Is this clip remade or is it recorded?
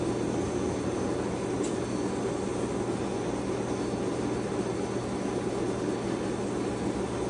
recorded